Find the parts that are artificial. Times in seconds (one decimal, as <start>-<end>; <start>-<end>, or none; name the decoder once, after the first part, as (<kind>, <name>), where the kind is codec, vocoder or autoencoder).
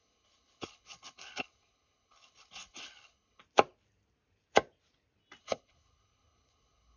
0.0-3.4 (codec, HILCodec); 5.4-7.0